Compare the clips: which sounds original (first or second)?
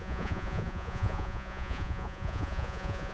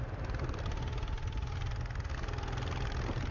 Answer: second